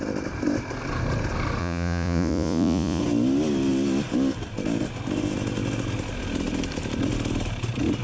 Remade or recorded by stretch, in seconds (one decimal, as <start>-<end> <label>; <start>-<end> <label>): 0.0-1.6 recorded; 1.6-3.0 remade; 3.0-8.0 recorded